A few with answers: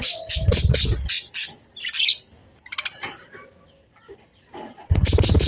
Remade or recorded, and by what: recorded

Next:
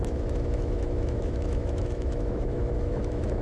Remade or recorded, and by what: remade, autoencoder, DAC-VAE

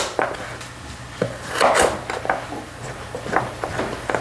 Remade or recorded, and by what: recorded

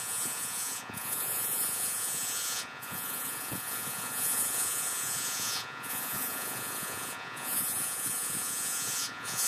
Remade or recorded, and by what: remade, vocoder, Vocos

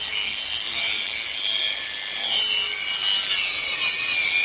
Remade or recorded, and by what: recorded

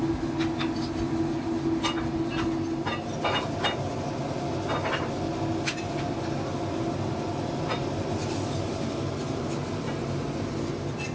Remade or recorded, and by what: recorded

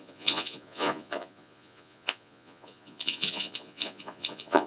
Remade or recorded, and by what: remade, vocoder, Vocos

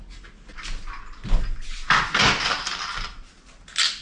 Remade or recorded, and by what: recorded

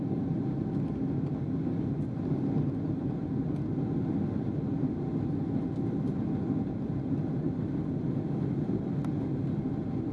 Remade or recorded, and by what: recorded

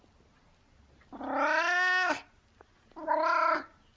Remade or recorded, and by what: recorded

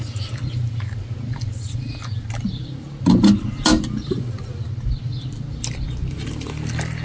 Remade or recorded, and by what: recorded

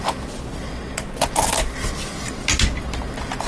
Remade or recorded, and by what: recorded